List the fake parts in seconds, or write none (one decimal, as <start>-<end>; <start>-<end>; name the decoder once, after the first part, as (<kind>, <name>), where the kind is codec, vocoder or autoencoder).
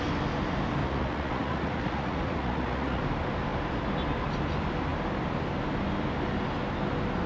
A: 0.8-3.0 (vocoder, Vocos)